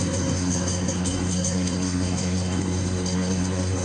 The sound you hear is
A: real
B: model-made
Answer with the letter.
B